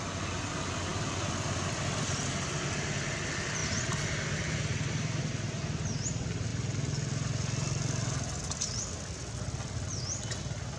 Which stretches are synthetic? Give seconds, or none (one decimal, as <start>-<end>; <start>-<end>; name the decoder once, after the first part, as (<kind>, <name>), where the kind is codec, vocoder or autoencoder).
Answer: none